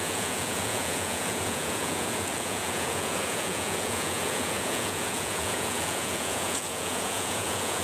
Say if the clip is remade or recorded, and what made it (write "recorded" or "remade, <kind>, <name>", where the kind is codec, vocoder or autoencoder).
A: remade, vocoder, Vocos